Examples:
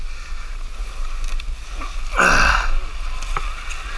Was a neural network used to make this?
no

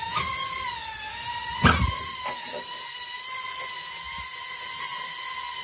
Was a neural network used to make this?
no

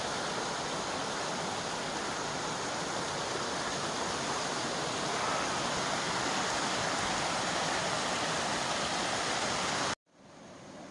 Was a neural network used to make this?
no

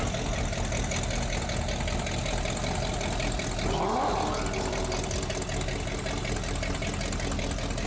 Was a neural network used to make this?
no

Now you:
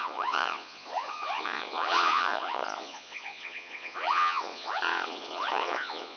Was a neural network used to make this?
yes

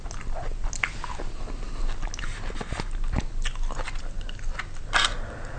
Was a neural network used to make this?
no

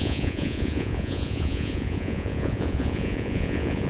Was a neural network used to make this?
yes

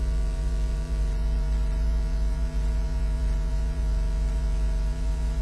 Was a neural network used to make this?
yes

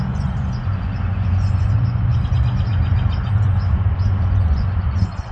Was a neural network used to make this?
yes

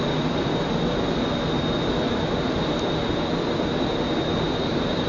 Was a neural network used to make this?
no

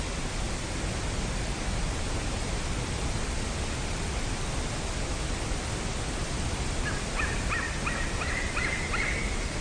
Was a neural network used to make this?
no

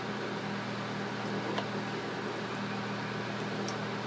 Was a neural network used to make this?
no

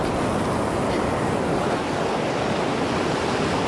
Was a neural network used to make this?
no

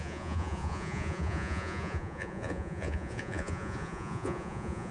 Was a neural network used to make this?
yes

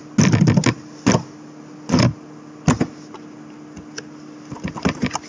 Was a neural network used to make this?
no